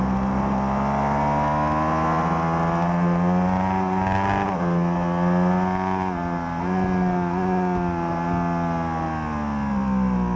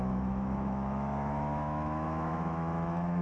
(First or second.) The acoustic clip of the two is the first